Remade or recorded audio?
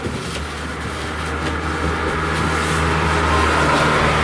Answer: recorded